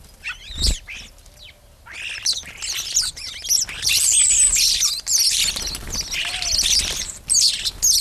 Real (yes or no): yes